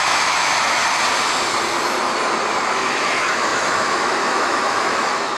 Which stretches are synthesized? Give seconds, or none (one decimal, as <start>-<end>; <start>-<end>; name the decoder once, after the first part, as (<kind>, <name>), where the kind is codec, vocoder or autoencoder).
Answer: 0.0-0.8 (autoencoder, DAC-VAE); 2.9-5.4